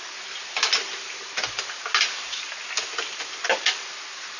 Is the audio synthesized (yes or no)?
no